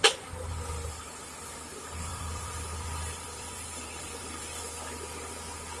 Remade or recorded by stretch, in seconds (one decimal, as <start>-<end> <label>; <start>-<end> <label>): 0.0-2.1 recorded; 2.1-4.6 remade; 4.6-5.8 recorded